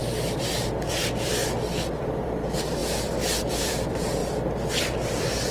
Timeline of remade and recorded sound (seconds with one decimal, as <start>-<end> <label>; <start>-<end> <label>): 0.0-1.4 remade; 1.4-2.0 recorded; 2.0-4.2 remade; 4.2-4.8 recorded; 4.8-5.5 remade